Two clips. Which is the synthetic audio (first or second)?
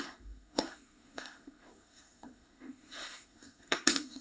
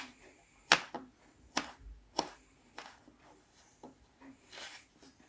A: first